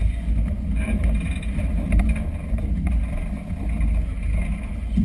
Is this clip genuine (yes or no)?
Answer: yes